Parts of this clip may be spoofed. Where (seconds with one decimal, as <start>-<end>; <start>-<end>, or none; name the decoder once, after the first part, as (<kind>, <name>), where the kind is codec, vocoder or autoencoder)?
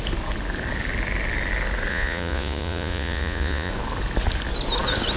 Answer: 1.9-3.7 (vocoder, Vocos)